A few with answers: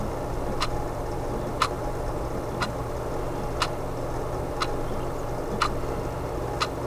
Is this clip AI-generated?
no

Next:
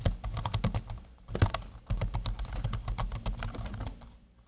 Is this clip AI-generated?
no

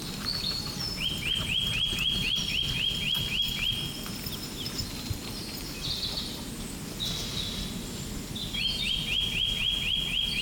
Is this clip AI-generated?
no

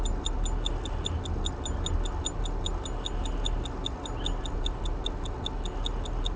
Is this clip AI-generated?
no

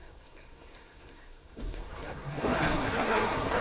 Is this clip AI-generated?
yes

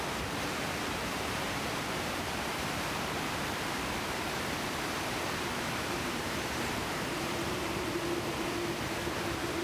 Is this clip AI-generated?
yes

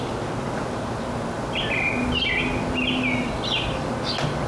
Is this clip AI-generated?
no